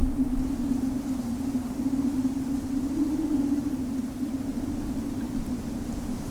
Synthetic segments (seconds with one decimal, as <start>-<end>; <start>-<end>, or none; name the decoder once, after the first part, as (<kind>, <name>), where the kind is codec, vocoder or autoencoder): none